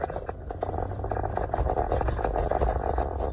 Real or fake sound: real